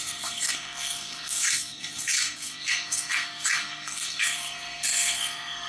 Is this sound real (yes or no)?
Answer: no